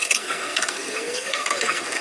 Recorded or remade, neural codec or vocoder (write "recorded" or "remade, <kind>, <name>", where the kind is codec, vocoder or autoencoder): remade, codec, SNAC